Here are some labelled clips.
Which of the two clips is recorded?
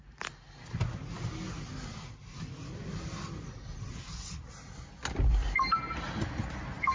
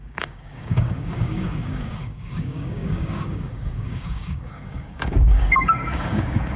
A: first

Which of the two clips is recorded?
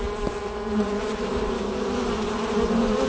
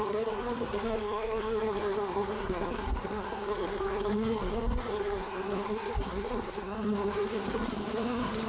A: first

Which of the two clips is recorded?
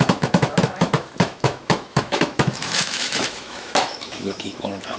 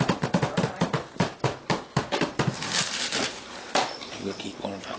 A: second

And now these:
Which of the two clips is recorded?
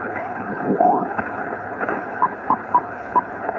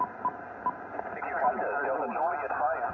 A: second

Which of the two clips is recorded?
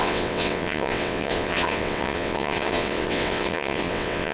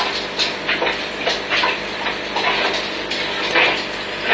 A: second